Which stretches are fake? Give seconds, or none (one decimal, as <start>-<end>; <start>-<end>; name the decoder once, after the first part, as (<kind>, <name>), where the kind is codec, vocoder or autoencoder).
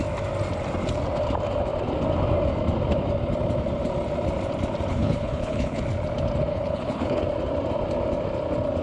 4.9-5.8 (codec, HILCodec); 6.5-7.2